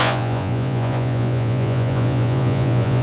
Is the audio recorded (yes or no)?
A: no